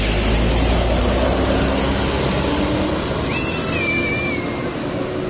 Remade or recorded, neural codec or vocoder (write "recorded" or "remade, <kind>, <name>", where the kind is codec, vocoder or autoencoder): recorded